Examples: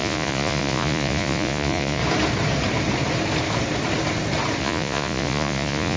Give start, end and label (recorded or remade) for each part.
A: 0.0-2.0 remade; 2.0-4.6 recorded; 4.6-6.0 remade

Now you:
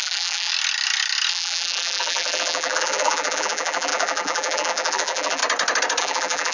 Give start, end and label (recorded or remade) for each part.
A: 0.0-0.5 remade; 0.5-1.3 recorded; 1.3-5.4 remade; 5.4-6.0 recorded; 6.0-6.5 remade

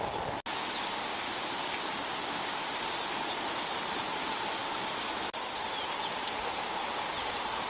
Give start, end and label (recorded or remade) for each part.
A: 0.0-7.7 recorded

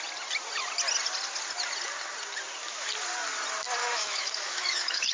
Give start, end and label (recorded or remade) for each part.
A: 0.0-3.8 recorded; 3.8-5.1 remade

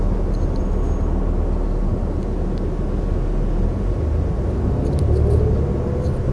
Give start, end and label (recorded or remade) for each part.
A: 0.0-6.3 recorded

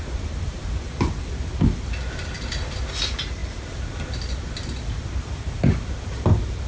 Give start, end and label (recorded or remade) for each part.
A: 0.0-6.7 recorded